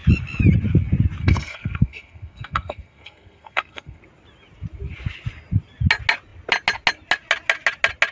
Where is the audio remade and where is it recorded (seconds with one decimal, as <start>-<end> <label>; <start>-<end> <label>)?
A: 0.0-1.2 recorded; 1.2-4.0 remade; 4.0-8.1 recorded